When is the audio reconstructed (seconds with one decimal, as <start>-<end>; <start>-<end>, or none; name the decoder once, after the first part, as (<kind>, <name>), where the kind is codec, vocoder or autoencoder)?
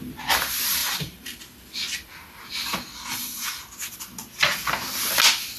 0.8-1.4 (vocoder, BigVGAN v2); 2.9-3.7